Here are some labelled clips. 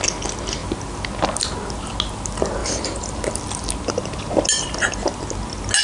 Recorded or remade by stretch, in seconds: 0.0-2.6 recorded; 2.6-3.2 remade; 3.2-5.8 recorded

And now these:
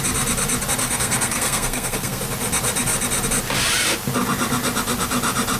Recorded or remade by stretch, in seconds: 0.0-0.8 recorded; 0.8-2.2 remade; 2.2-5.6 recorded

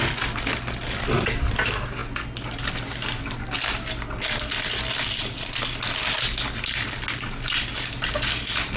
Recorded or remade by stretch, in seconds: 0.0-8.8 recorded